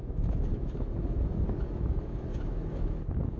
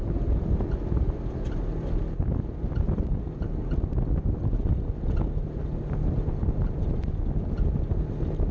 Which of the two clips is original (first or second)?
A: second